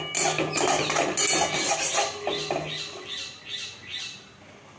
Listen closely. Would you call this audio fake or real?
real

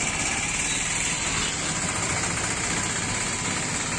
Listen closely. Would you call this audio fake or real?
real